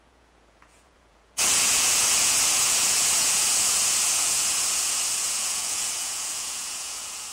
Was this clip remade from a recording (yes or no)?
yes